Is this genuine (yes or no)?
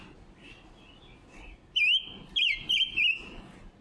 yes